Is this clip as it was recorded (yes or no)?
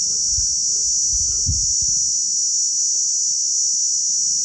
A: yes